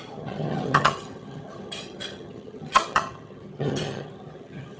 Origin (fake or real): fake